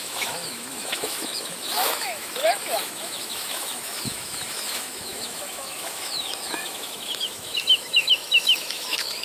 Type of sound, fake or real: fake